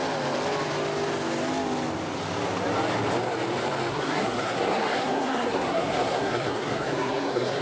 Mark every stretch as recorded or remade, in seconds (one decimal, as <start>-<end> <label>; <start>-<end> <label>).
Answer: 0.0-3.9 recorded; 3.9-7.6 remade

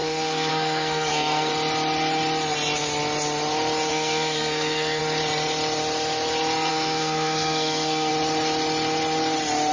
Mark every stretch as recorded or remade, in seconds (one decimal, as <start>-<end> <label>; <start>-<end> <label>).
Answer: 0.0-1.5 remade; 1.5-3.9 recorded; 3.9-5.0 remade; 5.0-6.7 recorded; 6.7-8.1 remade; 8.1-9.7 recorded

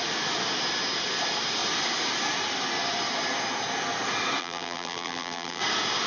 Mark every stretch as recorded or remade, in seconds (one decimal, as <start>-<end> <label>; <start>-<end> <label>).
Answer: 0.0-4.4 recorded; 4.4-5.6 remade; 5.6-6.1 recorded

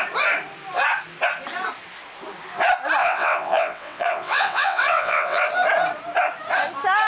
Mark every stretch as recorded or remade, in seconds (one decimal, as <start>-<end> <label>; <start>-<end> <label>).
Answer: 0.0-3.0 recorded; 3.0-5.4 remade; 5.4-7.1 recorded